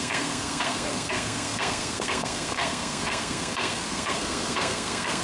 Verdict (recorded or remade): remade